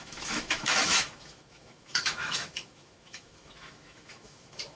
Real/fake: fake